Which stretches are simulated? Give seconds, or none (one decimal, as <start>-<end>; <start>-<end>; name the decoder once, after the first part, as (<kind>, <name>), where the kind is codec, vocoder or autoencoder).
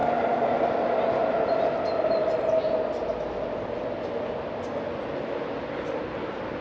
none